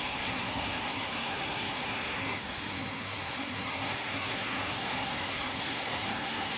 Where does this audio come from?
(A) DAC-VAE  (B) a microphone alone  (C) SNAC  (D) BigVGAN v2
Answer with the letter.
C